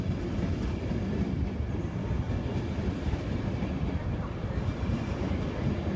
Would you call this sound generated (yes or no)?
no